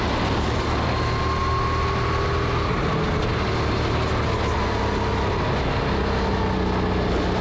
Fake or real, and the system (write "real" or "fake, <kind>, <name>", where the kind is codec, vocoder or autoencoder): real